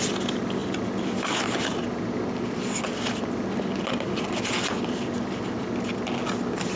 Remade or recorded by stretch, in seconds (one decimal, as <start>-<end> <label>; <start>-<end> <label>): 0.0-6.8 recorded